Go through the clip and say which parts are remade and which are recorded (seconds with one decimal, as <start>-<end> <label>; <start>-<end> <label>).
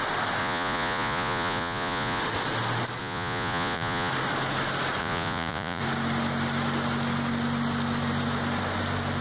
0.0-0.4 recorded; 0.4-2.2 remade; 2.2-3.0 recorded; 3.0-4.1 remade; 4.1-5.0 recorded; 5.0-5.8 remade; 5.8-9.2 recorded